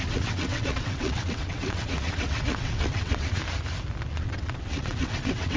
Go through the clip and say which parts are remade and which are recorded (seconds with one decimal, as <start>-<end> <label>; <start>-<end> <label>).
0.0-3.4 remade; 3.4-4.1 recorded; 4.1-5.6 remade